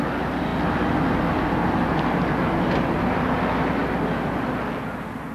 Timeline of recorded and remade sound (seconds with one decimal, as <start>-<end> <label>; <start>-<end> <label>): 0.0-5.3 recorded